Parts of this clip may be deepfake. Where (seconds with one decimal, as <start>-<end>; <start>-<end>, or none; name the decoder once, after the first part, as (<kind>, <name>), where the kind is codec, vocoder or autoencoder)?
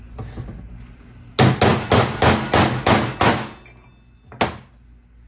none